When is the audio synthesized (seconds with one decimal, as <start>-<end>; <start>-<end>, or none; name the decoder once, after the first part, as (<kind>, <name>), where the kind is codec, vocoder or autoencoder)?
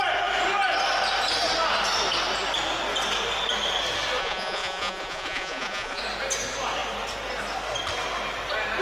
4.2-6.0 (vocoder, Vocos)